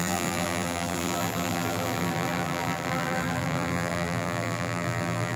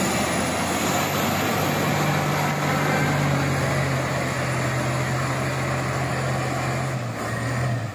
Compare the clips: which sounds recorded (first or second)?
second